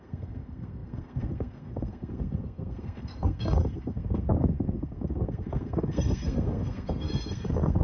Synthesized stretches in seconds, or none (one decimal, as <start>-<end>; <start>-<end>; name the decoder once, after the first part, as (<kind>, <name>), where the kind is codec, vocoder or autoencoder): 0.0-7.8 (codec, SNAC)